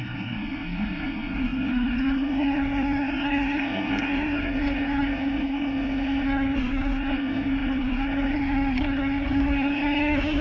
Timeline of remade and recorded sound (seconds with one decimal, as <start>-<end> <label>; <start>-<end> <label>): 0.0-10.4 remade